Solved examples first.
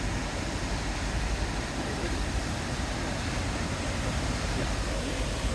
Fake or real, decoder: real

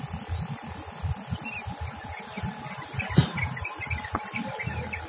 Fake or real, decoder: real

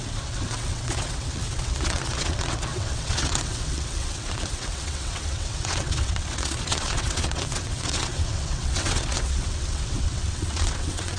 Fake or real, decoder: fake, vocoder, WaveNeXt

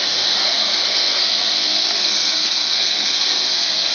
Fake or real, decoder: fake, codec, SNAC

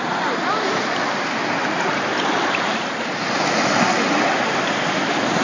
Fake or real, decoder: real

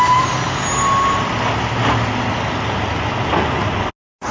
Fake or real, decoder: real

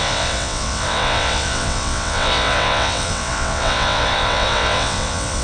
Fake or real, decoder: fake, vocoder, WaveNeXt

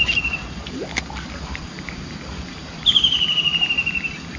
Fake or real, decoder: real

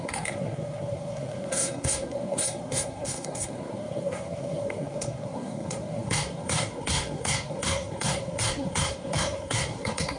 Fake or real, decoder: fake, codec, SNAC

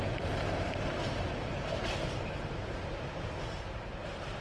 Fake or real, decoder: real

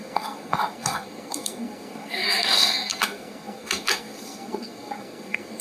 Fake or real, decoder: fake, codec, SNAC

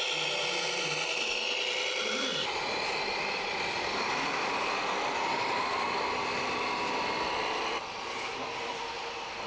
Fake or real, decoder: real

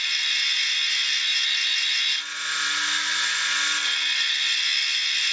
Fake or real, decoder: real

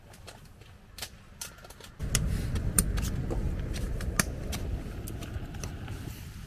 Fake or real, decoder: real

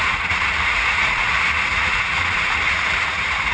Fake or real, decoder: fake, vocoder, Vocos